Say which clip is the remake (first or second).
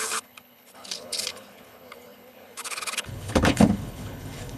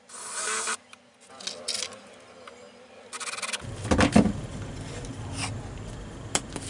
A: first